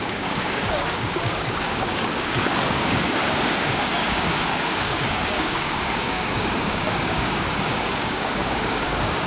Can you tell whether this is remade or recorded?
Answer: remade